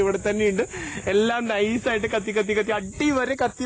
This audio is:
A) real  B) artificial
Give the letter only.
A